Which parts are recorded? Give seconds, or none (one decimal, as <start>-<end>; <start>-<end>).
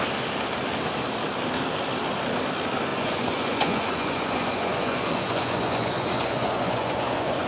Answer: 0.0-2.9